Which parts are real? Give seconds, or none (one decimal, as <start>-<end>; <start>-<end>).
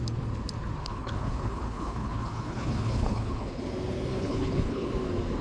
0.0-0.8; 3.6-4.1; 4.9-5.4